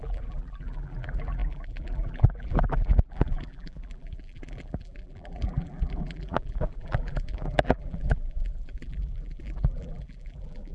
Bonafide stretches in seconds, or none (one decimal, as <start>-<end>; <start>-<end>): none